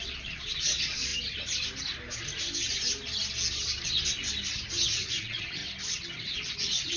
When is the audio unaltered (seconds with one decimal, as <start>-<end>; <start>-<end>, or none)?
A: 1.1-4.7; 5.6-6.2